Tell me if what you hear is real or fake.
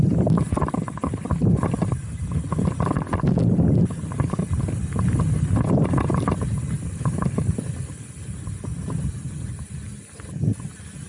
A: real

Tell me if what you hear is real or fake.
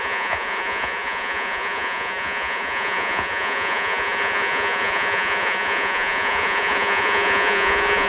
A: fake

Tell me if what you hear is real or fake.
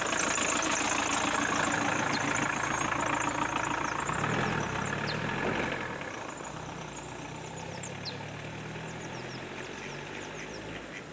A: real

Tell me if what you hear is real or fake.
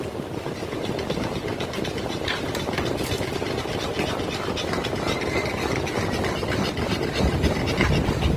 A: real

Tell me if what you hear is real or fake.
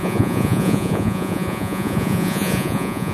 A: fake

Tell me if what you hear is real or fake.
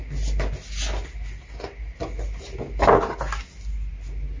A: real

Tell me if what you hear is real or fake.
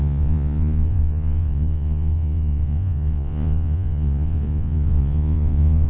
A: fake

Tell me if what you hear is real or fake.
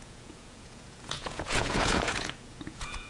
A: fake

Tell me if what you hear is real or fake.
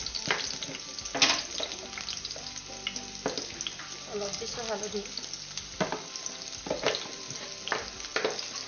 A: real